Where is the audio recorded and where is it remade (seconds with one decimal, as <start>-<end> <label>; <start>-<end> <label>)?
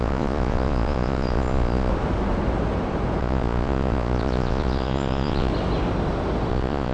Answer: 0.0-1.9 remade; 1.9-3.2 recorded; 3.2-5.5 remade; 5.5-6.5 recorded; 6.5-6.9 remade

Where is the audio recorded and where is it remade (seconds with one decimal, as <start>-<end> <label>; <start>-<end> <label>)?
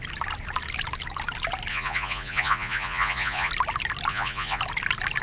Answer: 0.0-1.7 recorded; 1.7-3.5 remade; 3.5-4.1 recorded; 4.1-4.6 remade; 4.6-5.2 recorded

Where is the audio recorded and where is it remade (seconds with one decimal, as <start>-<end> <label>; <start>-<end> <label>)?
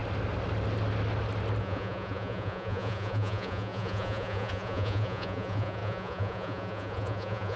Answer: 0.0-1.6 recorded; 1.6-7.6 remade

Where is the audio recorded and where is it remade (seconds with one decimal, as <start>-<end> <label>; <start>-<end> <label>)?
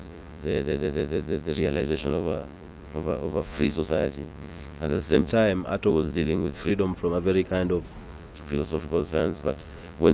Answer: 0.0-5.3 remade; 5.3-5.9 recorded; 5.9-6.7 remade; 6.7-8.0 recorded; 8.0-10.1 remade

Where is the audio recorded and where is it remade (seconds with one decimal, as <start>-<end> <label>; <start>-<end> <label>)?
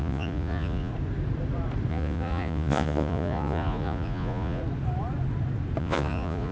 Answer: 0.0-0.9 remade; 0.9-1.9 recorded; 1.9-4.6 remade; 4.6-5.8 recorded; 5.8-6.5 remade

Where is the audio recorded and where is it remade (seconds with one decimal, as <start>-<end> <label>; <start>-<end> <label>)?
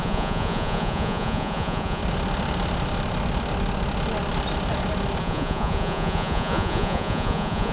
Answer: 0.0-2.0 remade; 2.0-5.2 recorded; 5.2-7.7 remade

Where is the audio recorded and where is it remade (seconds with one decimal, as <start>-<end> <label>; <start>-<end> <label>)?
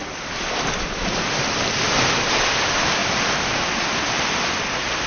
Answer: 0.0-5.1 recorded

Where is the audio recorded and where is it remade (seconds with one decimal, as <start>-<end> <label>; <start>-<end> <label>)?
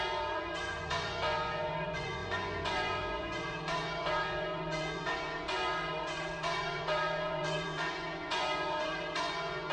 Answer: 0.0-9.7 remade